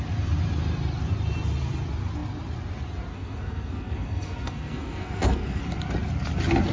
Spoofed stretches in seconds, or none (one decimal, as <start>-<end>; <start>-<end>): 3.1-5.6